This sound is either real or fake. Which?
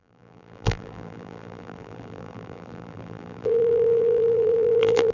fake